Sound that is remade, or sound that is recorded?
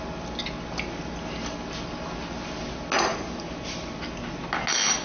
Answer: recorded